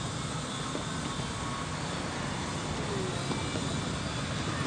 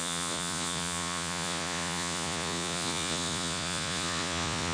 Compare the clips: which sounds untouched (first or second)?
first